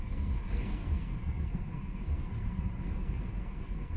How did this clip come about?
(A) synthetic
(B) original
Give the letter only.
A